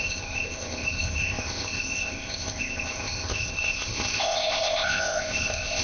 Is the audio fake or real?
fake